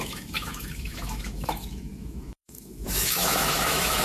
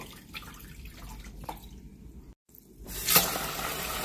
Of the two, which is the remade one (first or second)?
first